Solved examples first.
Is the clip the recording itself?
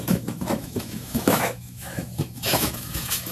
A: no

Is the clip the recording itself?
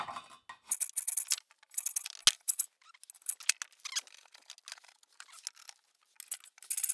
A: yes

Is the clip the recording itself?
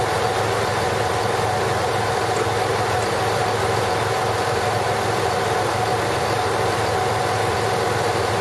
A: yes